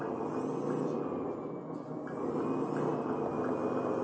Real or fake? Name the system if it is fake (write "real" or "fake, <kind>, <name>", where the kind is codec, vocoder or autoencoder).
real